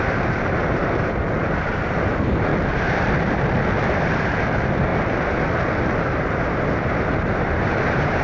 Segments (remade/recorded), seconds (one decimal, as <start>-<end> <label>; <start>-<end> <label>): 0.0-2.5 remade; 2.5-3.8 recorded; 3.8-4.9 remade; 4.9-6.0 recorded; 6.0-8.2 remade